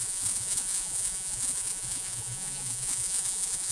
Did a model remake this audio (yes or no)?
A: yes